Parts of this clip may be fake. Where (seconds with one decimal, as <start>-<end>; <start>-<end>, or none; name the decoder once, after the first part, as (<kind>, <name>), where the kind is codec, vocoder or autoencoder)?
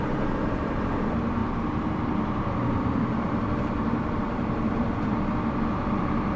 1.4-5.2 (vocoder, BigVGAN v2)